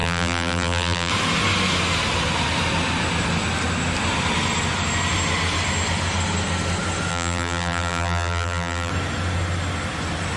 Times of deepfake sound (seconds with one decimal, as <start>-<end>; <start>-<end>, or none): 0.0-1.1; 7.1-8.9